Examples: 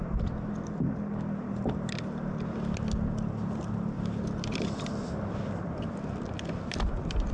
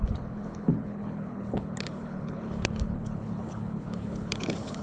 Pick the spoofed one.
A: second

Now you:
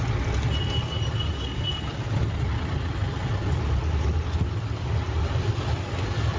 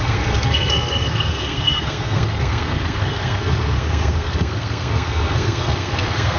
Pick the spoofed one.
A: second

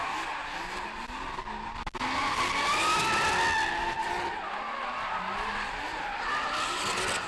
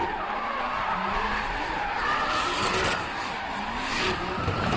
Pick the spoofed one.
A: second